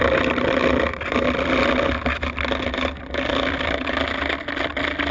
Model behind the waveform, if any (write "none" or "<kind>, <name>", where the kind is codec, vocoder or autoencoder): none